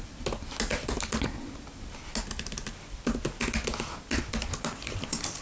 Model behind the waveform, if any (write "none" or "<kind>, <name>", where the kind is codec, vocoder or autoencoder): none